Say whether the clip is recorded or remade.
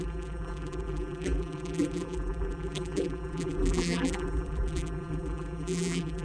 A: remade